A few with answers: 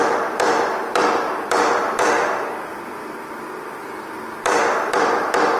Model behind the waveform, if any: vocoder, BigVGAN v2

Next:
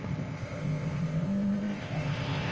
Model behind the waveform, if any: codec, ZipCodec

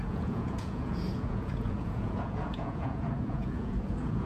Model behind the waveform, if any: vocoder, Vocos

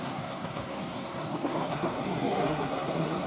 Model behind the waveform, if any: codec, SNAC